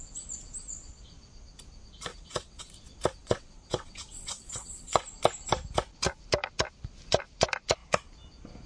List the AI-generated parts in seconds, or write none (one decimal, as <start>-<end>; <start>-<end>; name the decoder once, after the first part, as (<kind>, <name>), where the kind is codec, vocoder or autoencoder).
2.1-2.7 (vocoder, WaveNeXt); 3.2-5.0